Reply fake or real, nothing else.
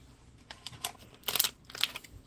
real